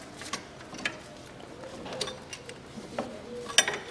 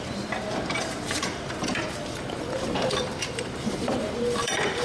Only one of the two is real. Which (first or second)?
first